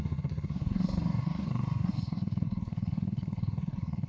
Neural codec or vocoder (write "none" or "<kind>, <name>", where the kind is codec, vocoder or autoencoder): codec, SNAC